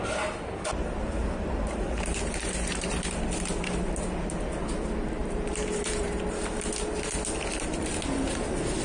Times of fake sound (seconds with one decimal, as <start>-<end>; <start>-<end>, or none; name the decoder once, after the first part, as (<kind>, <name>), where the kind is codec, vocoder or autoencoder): 1.2-3.1 (vocoder, BigVGAN v2); 5.2-6.2